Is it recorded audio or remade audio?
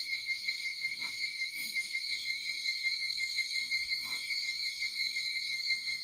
remade